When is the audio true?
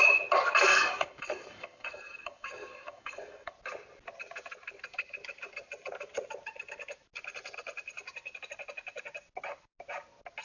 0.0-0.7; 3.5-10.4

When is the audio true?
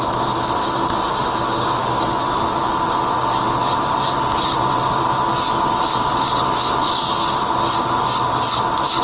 0.0-9.0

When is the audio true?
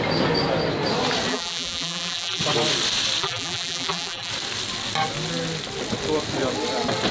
0.0-1.3; 2.4-3.2; 4.3-7.1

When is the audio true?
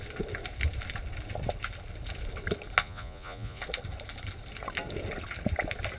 0.0-2.8; 3.6-6.0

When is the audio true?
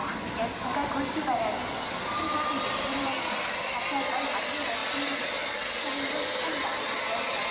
0.0-7.5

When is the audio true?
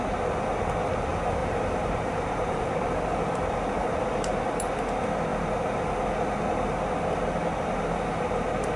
0.0-1.4; 4.7-8.8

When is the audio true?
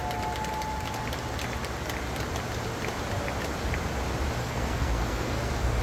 0.0-4.4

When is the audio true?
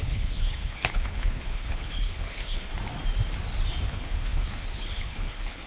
2.7-3.9